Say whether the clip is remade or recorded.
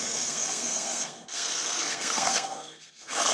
remade